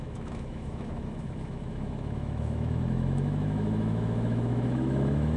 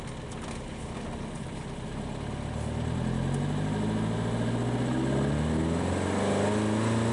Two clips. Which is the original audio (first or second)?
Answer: second